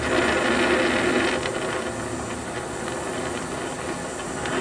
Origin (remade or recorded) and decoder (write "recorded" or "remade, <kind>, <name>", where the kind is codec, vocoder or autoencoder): recorded